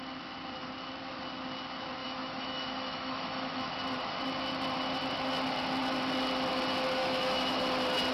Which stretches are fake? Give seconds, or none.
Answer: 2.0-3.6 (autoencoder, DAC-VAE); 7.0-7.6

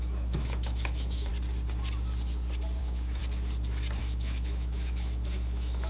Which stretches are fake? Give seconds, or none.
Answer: 0.0-1.3 (autoencoder, DAC-VAE); 2.8-3.2; 4.0-5.9